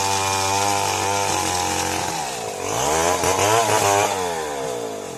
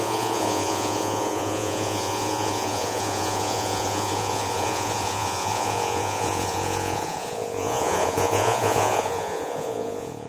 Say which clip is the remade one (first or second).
second